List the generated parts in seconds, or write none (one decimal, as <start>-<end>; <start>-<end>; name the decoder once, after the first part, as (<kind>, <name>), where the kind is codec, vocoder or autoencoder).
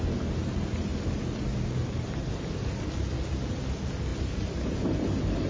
none